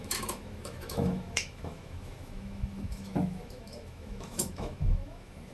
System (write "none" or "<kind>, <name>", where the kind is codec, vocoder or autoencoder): autoencoder, DAC-VAE